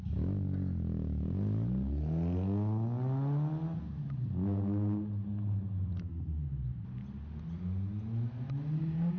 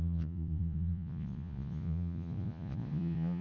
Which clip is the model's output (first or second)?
second